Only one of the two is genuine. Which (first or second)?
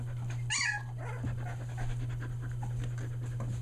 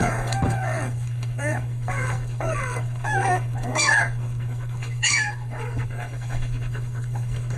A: first